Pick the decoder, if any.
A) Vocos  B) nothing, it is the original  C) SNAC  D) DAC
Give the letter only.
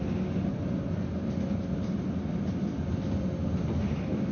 B